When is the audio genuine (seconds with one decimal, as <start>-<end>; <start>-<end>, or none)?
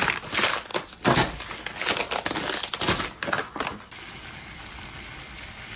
0.0-5.8